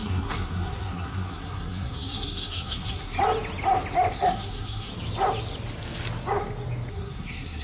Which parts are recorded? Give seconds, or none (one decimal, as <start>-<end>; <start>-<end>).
3.2-4.1; 4.9-6.9